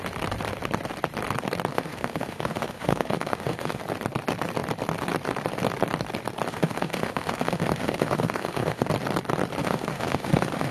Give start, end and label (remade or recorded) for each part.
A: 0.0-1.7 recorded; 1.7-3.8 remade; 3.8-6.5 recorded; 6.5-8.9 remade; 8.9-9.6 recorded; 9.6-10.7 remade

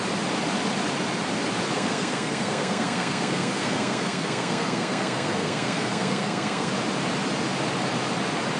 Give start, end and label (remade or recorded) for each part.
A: 0.0-1.7 recorded; 1.7-6.7 remade; 6.7-8.6 recorded

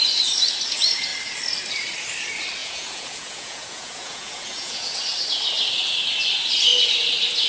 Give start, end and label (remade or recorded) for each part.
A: 0.0-2.6 recorded; 2.6-5.0 remade; 5.0-7.5 recorded